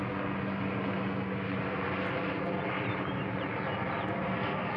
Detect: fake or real real